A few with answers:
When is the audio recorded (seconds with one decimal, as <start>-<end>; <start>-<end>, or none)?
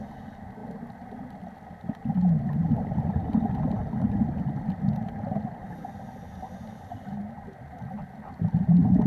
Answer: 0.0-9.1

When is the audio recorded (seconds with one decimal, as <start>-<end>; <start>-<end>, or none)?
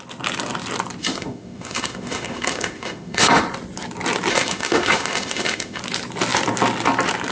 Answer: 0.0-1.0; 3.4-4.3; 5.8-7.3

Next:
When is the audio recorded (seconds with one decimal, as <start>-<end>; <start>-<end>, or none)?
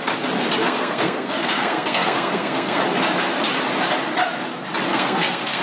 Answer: 0.0-0.6; 2.8-4.9